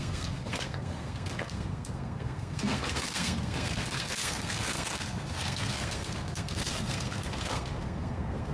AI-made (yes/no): yes